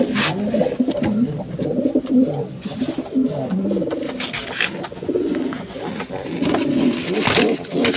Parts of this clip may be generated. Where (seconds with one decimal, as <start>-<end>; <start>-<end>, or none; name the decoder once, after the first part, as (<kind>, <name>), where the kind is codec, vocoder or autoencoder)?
4.9-5.7 (vocoder, Vocos)